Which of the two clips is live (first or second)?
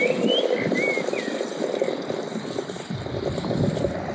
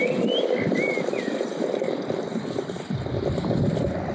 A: first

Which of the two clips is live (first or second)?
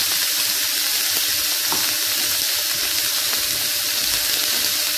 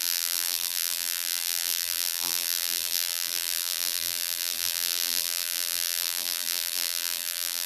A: first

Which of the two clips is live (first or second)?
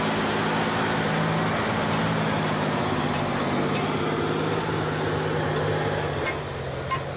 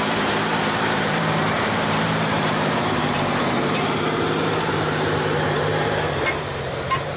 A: first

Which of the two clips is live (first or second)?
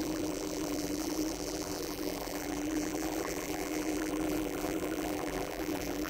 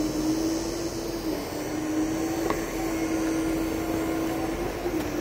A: second